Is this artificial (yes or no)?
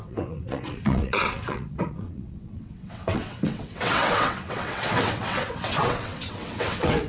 yes